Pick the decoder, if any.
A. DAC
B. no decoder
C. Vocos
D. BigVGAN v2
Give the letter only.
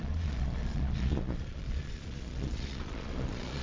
C